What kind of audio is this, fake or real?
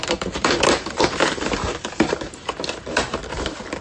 fake